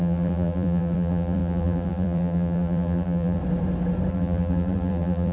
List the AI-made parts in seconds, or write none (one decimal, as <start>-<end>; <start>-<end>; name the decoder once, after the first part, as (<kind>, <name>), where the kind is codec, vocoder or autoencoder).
0.0-3.4 (vocoder, BigVGAN v2); 4.1-5.3